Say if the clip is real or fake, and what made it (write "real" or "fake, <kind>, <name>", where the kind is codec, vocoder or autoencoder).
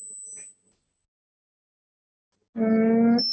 real